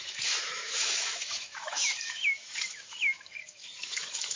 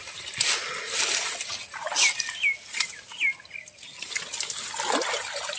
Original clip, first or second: second